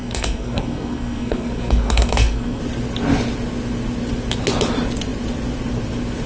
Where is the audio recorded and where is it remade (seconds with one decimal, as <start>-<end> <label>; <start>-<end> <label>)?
0.0-2.6 remade; 2.6-6.3 recorded